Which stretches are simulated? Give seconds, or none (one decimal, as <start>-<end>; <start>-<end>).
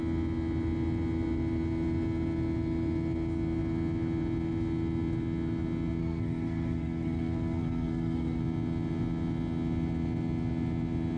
6.0-8.4